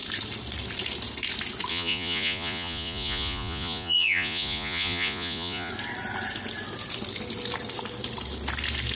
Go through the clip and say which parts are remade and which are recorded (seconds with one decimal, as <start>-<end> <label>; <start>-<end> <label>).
0.0-1.7 recorded; 1.7-5.7 remade; 5.7-8.9 recorded